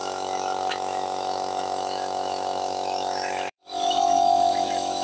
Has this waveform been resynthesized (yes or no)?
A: yes